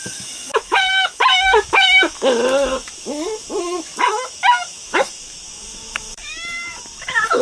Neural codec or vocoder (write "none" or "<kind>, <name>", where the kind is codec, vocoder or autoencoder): autoencoder, DAC-VAE